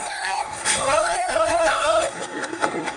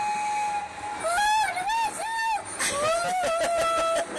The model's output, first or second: first